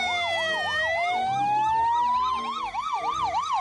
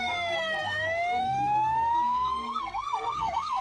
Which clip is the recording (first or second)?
first